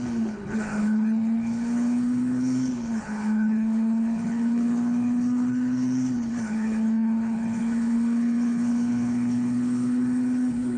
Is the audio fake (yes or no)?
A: yes